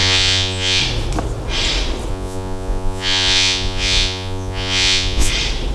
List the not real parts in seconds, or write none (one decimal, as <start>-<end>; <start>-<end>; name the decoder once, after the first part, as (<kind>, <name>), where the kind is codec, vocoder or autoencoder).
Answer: 0.0-0.8 (vocoder, Vocos); 2.1-5.3